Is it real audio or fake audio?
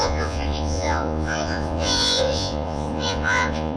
fake